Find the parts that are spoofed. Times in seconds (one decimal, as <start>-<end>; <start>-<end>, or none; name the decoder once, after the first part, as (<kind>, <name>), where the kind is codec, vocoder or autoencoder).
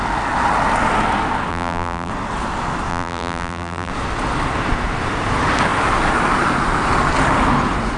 1.5-2.1 (vocoder, BigVGAN v2); 2.9-3.9